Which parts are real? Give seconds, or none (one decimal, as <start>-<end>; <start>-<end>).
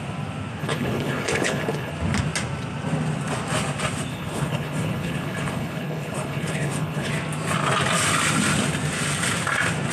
0.0-0.6; 1.9-4.1; 7.1-9.9